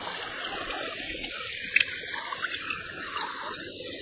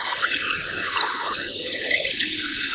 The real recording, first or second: first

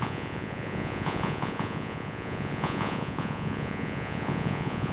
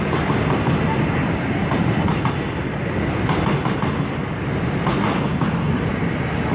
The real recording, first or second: second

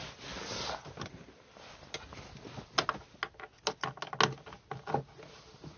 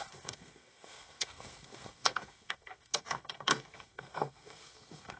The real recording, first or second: first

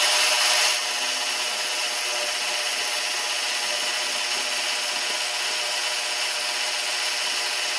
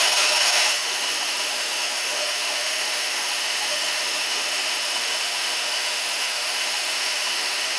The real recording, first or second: first